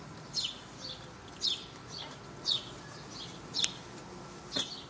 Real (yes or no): yes